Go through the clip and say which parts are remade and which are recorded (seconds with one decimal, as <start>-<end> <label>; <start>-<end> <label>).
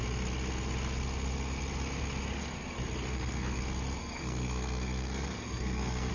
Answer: 0.0-3.1 recorded; 3.1-3.6 remade; 3.6-4.0 recorded; 4.0-6.1 remade